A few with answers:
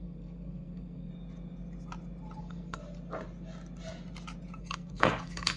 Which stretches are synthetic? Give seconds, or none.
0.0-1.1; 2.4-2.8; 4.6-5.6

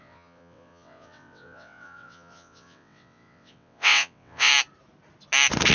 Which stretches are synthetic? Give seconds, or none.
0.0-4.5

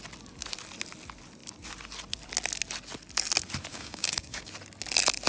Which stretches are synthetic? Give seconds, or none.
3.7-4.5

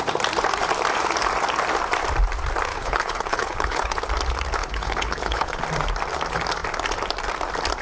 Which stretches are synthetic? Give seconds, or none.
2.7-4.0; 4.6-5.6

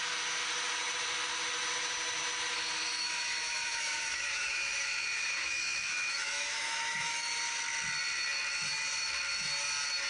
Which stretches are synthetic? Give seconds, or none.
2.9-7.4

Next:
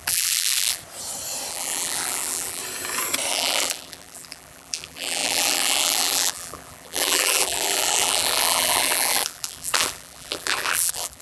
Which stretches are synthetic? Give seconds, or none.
0.0-0.8; 1.5-2.6; 3.3-11.2

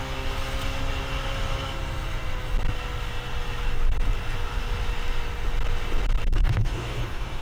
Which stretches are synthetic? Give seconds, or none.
6.3-7.4